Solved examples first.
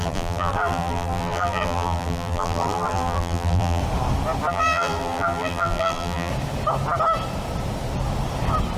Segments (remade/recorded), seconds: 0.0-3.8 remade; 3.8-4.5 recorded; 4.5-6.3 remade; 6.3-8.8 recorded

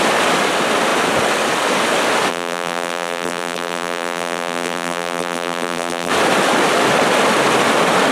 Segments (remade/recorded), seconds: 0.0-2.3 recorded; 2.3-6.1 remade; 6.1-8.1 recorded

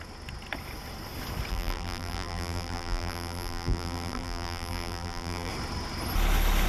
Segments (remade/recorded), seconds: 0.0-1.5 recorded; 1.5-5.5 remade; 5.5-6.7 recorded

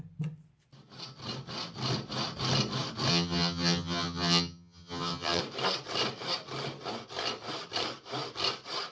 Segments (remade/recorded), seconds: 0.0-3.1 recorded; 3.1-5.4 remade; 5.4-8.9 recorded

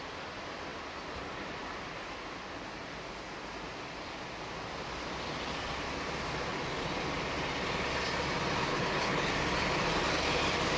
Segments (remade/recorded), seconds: 0.0-8.7 recorded; 8.7-9.3 remade; 9.3-10.8 recorded